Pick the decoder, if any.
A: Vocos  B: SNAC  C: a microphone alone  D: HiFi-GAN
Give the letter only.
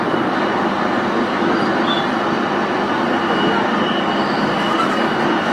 C